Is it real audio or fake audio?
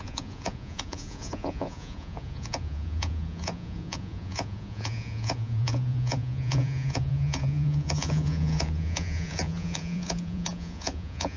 fake